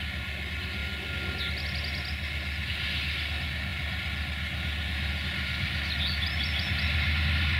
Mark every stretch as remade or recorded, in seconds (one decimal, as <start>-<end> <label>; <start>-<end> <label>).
0.0-7.6 recorded